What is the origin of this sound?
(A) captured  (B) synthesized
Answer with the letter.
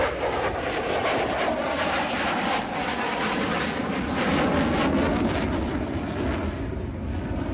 B